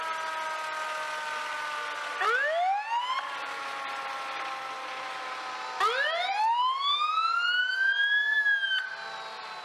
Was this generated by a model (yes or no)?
no